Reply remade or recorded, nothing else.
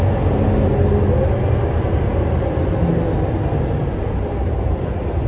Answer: recorded